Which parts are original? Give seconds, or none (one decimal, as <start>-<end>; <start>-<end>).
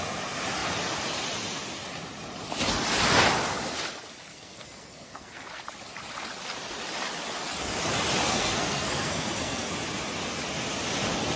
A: 0.0-4.3; 5.6-8.3; 9.7-11.4